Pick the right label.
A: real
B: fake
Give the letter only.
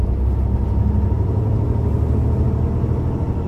A